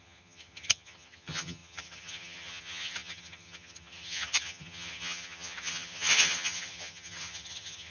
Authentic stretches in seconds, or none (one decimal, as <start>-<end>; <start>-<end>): none

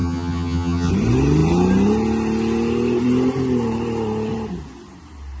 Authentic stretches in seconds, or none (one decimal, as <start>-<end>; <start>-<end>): 0.9-5.4

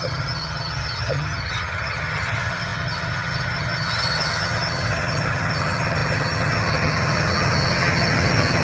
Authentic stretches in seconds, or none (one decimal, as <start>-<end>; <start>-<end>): none